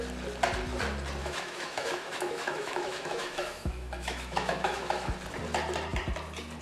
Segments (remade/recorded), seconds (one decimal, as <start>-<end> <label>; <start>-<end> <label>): 0.0-1.2 recorded; 1.2-5.1 remade; 5.1-6.6 recorded

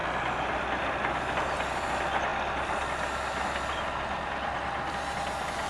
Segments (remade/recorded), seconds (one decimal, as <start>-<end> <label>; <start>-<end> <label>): 0.0-5.7 recorded

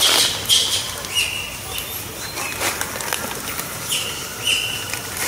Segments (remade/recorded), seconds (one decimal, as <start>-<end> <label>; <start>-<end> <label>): 0.0-5.3 recorded

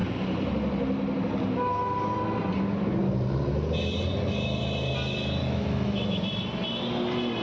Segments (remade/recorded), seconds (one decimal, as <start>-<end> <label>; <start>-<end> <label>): 0.0-5.4 recorded; 5.4-6.2 remade; 6.2-7.4 recorded